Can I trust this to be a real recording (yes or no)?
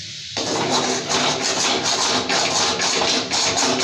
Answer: yes